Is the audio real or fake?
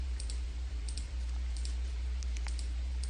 fake